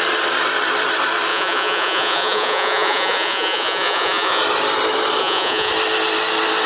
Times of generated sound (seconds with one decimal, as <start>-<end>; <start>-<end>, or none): 1.3-4.4; 5.2-5.7